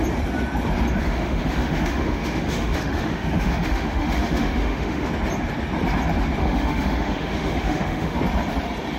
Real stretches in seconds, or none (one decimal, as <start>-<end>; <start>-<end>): 0.0-1.0; 5.1-6.4; 8.2-9.0